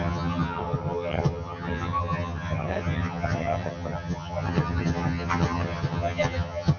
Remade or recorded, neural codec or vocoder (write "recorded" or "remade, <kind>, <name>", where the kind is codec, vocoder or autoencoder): remade, vocoder, HiFi-GAN